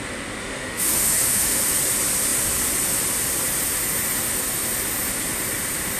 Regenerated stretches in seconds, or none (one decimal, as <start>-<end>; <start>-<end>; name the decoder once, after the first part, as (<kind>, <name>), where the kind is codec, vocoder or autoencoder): 0.4-1.6 (autoencoder, DAC-VAE)

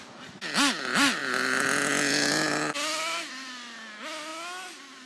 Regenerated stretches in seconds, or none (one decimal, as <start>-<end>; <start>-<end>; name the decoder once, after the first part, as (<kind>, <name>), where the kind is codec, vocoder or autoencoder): none

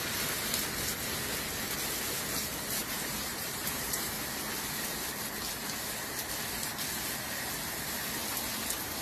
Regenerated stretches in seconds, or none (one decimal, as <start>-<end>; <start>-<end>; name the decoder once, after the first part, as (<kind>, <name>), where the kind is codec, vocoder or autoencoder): 2.8-4.1 (vocoder, BigVGAN v2)

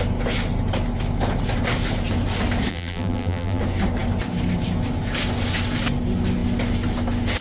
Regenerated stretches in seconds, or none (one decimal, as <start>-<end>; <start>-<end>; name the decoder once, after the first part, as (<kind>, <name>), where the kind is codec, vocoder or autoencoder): 2.7-3.6 (vocoder, BigVGAN v2)

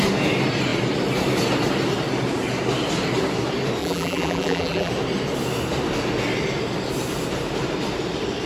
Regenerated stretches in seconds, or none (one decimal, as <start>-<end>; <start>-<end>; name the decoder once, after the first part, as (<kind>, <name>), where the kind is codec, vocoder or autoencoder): 3.8-4.9 (vocoder, BigVGAN v2)

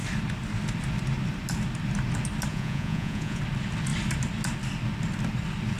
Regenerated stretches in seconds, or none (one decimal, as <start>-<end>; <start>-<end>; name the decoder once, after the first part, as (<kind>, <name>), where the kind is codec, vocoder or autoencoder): 2.5-3.4 (vocoder, Vocos)

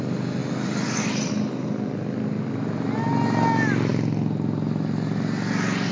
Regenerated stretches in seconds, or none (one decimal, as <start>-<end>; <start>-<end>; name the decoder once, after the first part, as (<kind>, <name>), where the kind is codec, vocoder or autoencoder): none